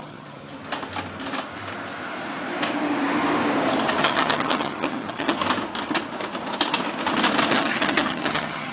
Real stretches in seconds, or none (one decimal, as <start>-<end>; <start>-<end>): 0.6-4.0; 5.4-7.5